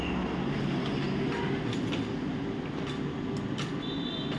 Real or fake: real